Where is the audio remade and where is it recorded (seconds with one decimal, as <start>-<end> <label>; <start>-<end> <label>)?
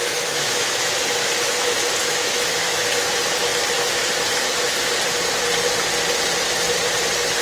0.0-0.9 remade; 0.9-2.0 recorded; 2.0-3.1 remade; 3.1-7.4 recorded